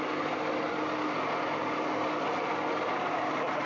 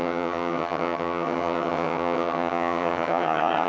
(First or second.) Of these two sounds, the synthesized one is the second